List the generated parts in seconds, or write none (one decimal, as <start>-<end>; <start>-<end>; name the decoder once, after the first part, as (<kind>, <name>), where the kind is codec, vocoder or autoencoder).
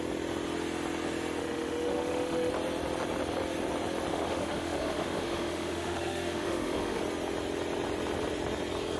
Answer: 1.4-2.5 (autoencoder, DAC-VAE); 4.1-7.0